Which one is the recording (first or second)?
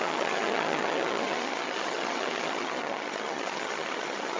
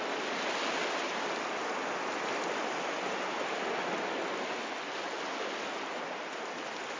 second